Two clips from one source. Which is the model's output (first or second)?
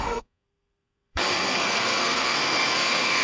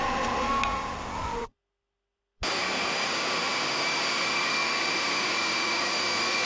first